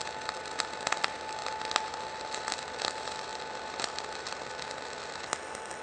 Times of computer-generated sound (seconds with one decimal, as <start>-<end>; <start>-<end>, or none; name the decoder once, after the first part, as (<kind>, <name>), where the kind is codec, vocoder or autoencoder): none